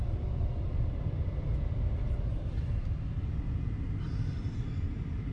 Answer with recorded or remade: recorded